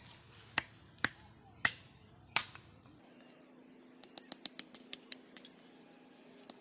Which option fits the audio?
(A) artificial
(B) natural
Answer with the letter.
B